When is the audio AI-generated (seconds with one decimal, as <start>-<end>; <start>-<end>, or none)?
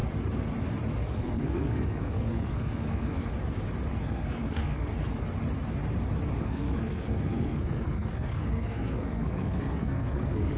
1.0-3.3; 4.0-4.9; 6.4-10.6